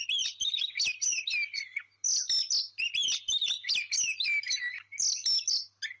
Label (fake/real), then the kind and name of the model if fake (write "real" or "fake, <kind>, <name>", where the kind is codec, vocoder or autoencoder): real